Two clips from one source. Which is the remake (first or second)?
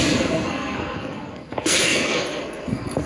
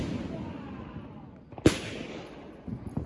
first